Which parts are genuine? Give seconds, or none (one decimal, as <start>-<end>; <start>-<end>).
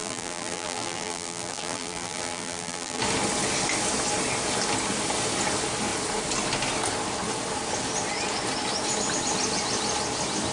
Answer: 3.0-10.5